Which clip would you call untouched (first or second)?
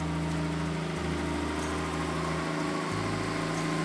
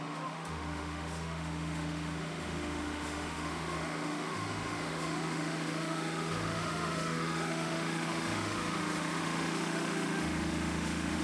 first